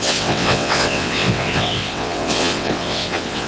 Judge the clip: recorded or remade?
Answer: remade